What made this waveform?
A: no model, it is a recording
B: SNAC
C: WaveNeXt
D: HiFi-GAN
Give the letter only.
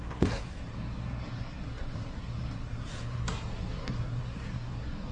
B